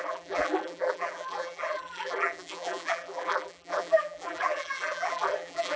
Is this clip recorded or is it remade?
remade